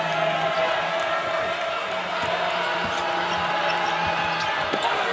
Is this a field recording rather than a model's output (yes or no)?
yes